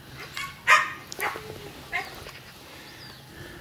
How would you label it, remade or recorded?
recorded